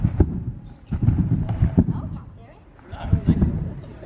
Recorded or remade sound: recorded